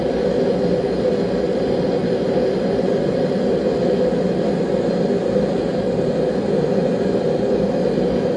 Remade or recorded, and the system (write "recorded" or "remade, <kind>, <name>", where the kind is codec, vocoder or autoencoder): recorded